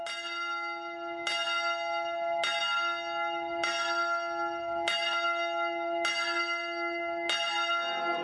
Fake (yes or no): no